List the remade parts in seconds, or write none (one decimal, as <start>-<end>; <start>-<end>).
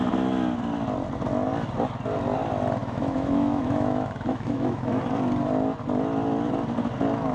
2.8-5.0